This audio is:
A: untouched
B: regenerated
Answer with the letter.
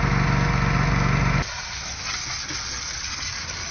A